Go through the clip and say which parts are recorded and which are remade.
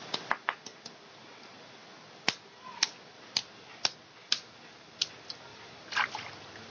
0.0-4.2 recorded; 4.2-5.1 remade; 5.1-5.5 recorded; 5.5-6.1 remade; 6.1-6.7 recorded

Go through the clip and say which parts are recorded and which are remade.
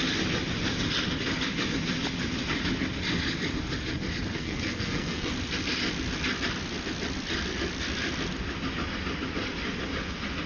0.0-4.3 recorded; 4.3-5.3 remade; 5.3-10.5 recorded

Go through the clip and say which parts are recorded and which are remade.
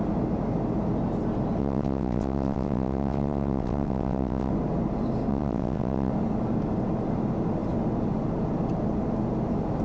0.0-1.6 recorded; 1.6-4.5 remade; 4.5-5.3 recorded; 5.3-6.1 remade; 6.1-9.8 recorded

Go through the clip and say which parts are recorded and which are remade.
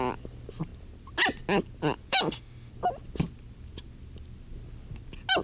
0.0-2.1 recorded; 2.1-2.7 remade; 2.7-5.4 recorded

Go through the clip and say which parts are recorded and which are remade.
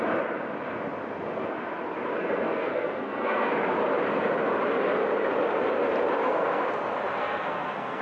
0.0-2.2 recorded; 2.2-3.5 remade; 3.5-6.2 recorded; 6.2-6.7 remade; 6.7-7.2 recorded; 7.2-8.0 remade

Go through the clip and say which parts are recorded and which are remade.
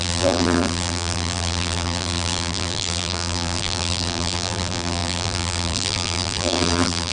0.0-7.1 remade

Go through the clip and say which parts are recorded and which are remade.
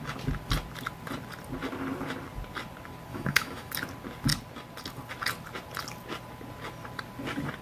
0.0-3.1 recorded; 3.1-3.7 remade; 3.7-7.6 recorded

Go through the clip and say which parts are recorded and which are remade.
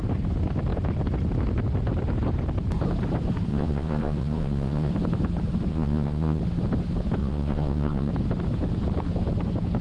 0.0-3.5 recorded; 3.5-4.9 remade; 4.9-5.7 recorded; 5.7-6.4 remade; 6.4-7.2 recorded; 7.2-8.1 remade; 8.1-9.8 recorded